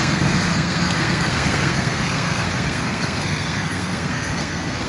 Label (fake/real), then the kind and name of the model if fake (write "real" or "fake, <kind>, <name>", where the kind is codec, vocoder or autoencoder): fake, codec, SNAC